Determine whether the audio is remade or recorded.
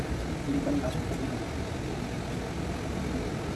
recorded